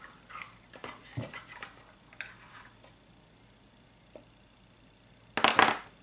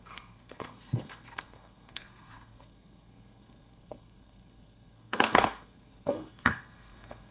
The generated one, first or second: second